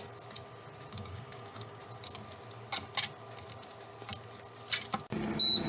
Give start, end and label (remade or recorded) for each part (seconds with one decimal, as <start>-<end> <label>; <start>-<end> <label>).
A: 0.0-0.9 recorded; 0.9-1.8 remade; 1.8-5.7 recorded